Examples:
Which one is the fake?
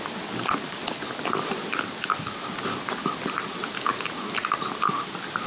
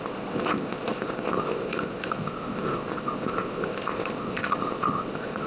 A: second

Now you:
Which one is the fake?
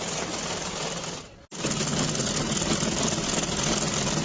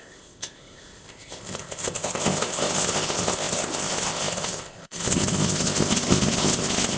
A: second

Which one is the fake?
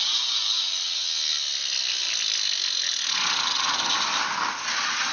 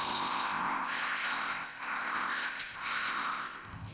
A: second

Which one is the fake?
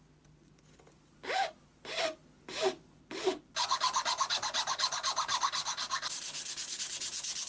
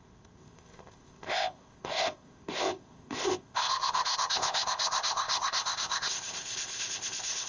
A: second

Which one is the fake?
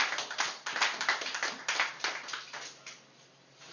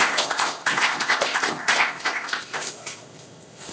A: second